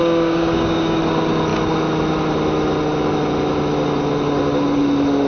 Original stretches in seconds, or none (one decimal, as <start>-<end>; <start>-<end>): 1.0-5.3